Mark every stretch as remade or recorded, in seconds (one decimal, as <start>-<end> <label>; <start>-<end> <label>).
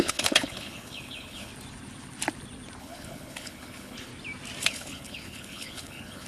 0.0-1.5 remade; 1.5-2.8 recorded; 2.8-4.1 remade; 4.1-4.6 recorded; 4.6-6.3 remade